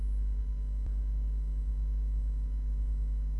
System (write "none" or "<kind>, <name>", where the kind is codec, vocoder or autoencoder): none